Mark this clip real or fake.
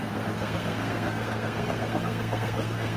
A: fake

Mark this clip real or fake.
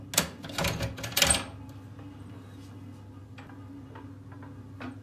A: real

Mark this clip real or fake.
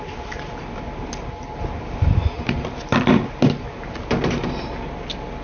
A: real